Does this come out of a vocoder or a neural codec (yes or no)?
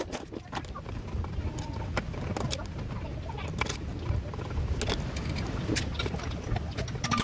no